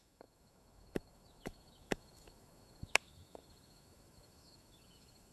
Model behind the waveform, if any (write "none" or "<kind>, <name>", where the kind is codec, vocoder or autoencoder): autoencoder, DAC-VAE